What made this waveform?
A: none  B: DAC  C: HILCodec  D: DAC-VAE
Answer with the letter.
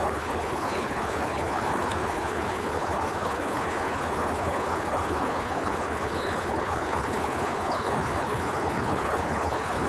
C